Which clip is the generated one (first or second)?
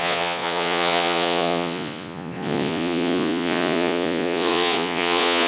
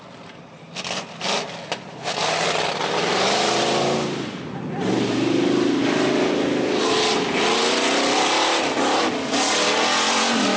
first